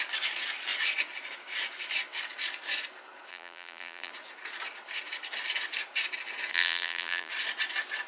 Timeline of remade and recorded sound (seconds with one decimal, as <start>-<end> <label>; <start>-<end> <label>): 0.0-3.3 recorded; 3.3-4.1 remade; 4.1-6.5 recorded; 6.5-7.3 remade; 7.3-8.1 recorded